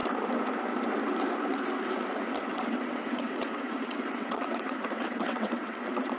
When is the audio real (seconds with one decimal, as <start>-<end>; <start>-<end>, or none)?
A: 0.0-2.5; 5.8-6.2